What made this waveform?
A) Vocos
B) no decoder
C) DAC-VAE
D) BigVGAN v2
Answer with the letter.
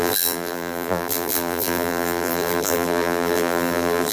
D